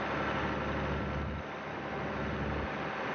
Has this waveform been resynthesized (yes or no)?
no